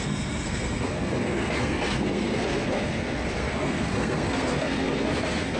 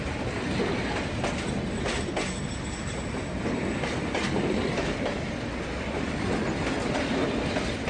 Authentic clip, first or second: second